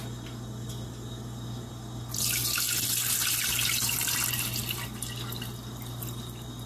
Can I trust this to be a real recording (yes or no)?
yes